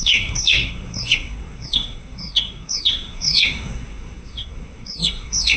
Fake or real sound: fake